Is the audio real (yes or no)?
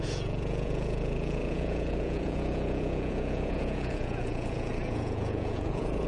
no